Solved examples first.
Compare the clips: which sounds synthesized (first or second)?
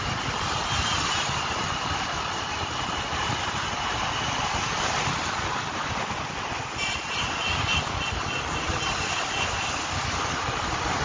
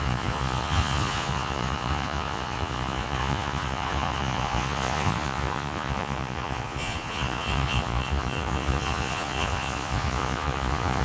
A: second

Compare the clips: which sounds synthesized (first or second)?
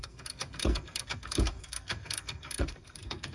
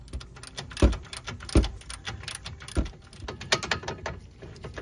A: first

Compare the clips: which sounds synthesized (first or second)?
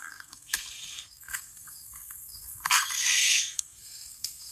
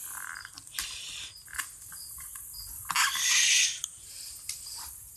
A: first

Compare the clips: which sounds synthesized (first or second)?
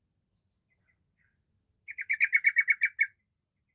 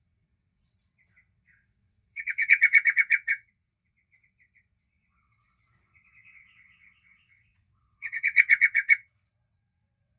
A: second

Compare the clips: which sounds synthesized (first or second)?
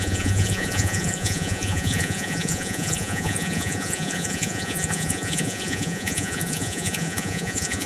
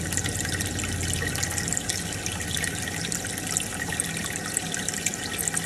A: first